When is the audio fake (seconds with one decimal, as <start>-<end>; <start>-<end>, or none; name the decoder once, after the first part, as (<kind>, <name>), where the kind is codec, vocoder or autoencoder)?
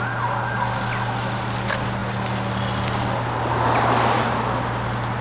none